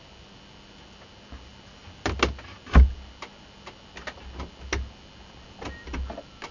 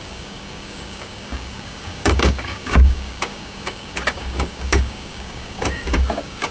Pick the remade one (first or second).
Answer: second